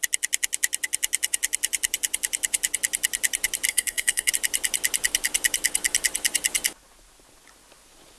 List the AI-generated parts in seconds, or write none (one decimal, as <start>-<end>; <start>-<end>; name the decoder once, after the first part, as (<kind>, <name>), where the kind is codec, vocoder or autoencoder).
3.7-4.3 (codec, SNAC)